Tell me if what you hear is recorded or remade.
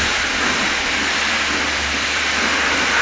remade